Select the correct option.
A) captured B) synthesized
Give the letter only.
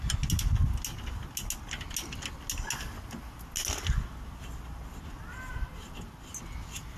A